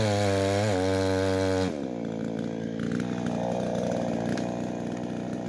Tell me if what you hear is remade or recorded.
recorded